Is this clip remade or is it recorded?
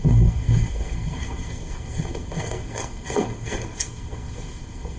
remade